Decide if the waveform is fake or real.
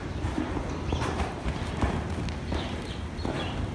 real